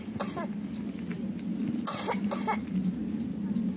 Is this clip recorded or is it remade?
recorded